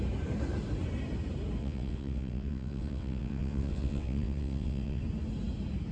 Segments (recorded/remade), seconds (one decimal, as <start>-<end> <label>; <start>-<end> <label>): 0.0-1.6 recorded; 1.6-5.0 remade; 5.0-5.9 recorded

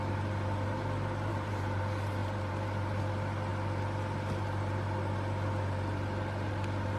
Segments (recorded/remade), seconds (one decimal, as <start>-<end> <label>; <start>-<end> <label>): 0.0-1.3 recorded; 1.3-1.8 remade; 1.8-2.2 recorded; 2.2-3.0 remade; 3.0-7.0 recorded